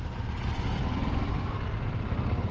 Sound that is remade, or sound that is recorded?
recorded